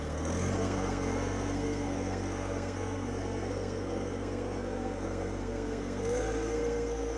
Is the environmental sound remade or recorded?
remade